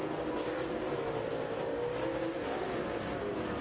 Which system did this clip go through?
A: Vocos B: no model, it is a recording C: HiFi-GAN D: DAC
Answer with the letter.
B